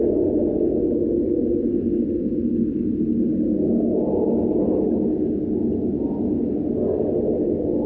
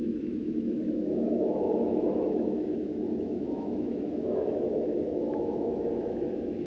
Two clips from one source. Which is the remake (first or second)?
second